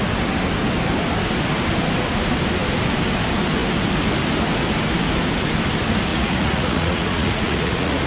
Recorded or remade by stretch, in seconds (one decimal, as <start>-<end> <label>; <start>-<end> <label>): 0.0-6.1 recorded; 6.1-8.1 remade

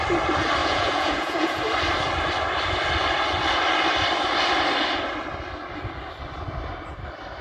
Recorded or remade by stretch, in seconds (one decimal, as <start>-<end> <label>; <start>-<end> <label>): 0.0-0.6 recorded; 0.6-1.6 remade; 1.6-7.4 recorded

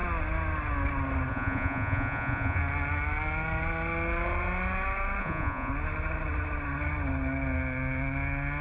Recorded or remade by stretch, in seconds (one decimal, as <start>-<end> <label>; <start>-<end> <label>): 0.0-1.3 recorded; 1.3-2.6 remade; 2.6-5.2 recorded; 5.2-5.7 remade; 5.7-8.6 recorded

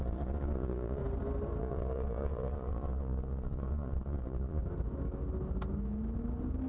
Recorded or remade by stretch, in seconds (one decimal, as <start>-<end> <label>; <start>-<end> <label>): 0.0-1.0 remade; 1.0-1.6 recorded; 1.6-4.6 remade; 4.6-6.7 recorded

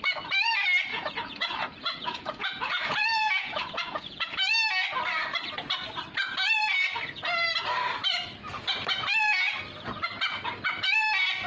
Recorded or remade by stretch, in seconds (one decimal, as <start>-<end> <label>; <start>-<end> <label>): 0.0-0.9 recorded; 0.9-4.4 remade; 4.4-11.5 recorded

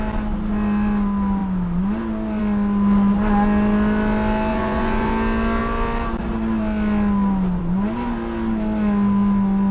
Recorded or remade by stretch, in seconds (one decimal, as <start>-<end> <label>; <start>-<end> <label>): 0.0-4.5 recorded; 4.5-5.1 remade; 5.1-9.7 recorded

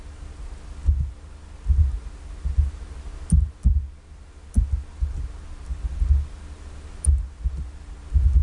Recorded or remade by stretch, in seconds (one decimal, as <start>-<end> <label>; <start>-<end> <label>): 0.0-8.4 recorded